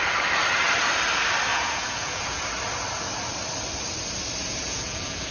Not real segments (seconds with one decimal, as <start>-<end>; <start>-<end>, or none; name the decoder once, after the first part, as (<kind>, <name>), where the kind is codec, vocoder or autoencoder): 1.5-2.4 (vocoder, Vocos); 4.4-5.3